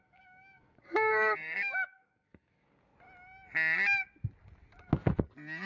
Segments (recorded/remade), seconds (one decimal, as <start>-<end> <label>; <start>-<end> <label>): 0.0-2.9 remade; 2.9-5.7 recorded